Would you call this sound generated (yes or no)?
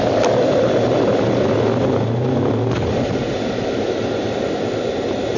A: no